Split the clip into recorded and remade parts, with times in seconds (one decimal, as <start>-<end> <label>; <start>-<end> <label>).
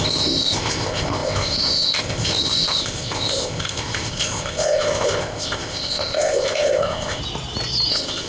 0.0-7.2 remade; 7.2-7.9 recorded; 7.9-8.3 remade